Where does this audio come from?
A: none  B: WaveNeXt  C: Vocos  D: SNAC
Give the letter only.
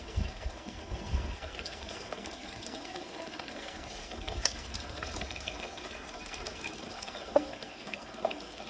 D